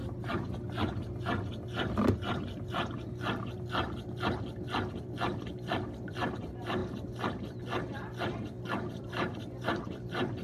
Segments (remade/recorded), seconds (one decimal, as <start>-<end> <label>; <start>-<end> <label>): 0.0-4.9 recorded; 4.9-6.8 remade; 6.8-9.0 recorded; 9.0-10.4 remade